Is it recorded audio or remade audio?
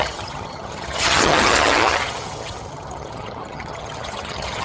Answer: remade